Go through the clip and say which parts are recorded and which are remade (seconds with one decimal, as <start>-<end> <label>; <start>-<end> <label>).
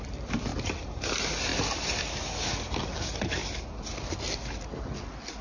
0.0-1.5 recorded; 1.5-2.0 remade; 2.0-3.4 recorded; 3.4-4.2 remade; 4.2-5.4 recorded